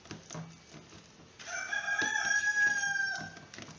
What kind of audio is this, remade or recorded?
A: recorded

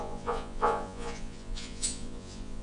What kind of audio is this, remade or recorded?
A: remade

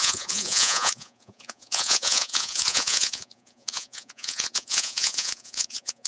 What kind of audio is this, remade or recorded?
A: remade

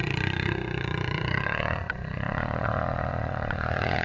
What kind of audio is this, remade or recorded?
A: remade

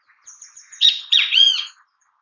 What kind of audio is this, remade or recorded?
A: remade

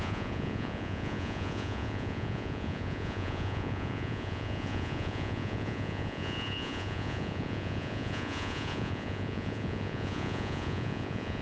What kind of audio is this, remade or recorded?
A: remade